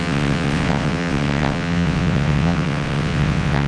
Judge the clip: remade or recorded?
remade